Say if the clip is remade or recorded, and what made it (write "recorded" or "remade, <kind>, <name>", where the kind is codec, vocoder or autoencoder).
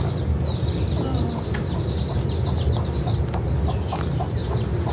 recorded